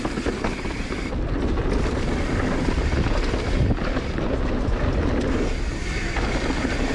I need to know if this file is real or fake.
real